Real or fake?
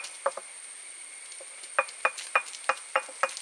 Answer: real